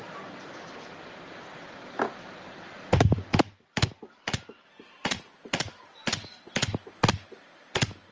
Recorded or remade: recorded